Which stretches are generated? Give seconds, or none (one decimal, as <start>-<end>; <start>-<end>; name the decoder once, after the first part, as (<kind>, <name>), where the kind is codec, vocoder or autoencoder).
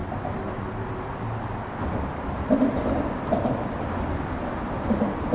none